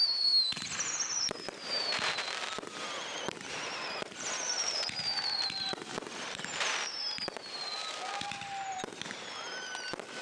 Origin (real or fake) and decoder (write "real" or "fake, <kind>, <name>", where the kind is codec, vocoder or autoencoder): fake, vocoder, BigVGAN v2